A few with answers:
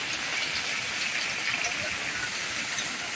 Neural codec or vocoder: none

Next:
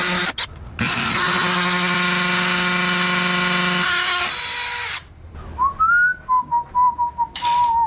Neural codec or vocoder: none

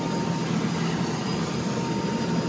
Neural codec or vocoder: none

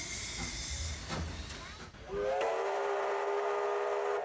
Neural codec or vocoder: none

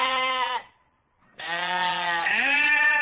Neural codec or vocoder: vocoder, Vocos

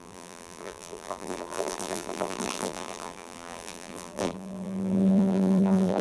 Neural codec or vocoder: vocoder, BigVGAN v2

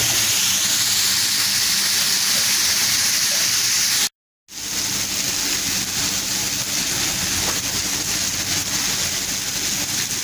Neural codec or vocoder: none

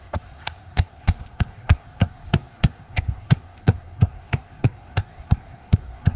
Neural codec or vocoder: codec, SNAC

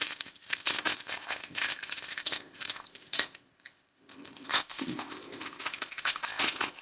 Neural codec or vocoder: codec, ZipCodec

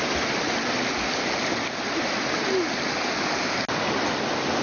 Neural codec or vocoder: none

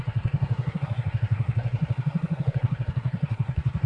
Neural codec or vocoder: codec, SNAC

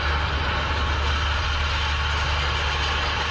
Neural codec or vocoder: none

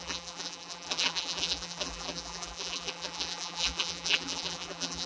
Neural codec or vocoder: vocoder, BigVGAN v2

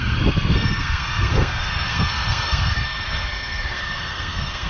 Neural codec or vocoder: codec, SNAC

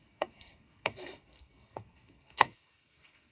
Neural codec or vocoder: codec, SNAC